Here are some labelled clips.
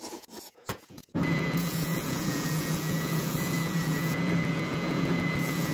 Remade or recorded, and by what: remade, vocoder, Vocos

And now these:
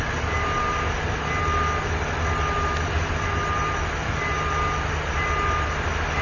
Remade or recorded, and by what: recorded